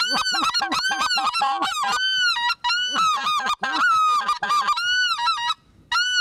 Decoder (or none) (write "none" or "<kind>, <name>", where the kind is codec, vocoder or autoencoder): none